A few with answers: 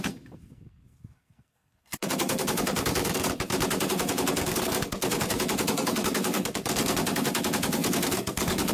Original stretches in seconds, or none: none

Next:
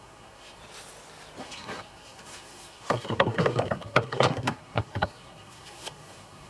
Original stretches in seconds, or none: 0.6-1.4

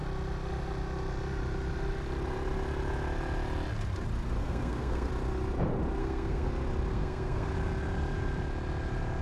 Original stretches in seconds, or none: 0.0-4.4; 5.1-6.0; 6.5-6.9; 7.5-9.2

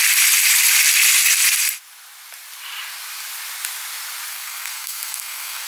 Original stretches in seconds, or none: 0.0-4.3

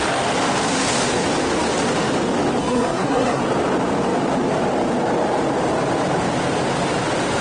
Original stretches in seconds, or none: 0.0-2.6; 3.4-7.4

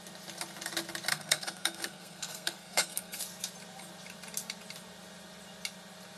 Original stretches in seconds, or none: 0.0-1.1; 3.2-6.2

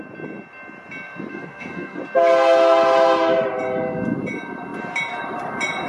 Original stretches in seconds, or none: 0.0-1.3; 2.0-5.9

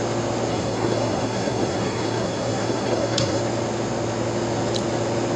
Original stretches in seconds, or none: 0.0-0.5; 3.4-5.4